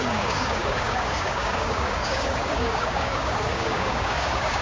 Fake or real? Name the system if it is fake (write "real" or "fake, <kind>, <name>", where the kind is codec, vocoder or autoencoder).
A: fake, codec, DAC